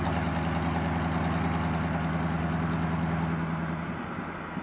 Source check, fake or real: real